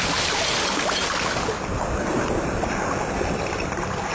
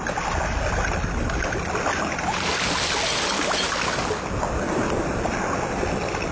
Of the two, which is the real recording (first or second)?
second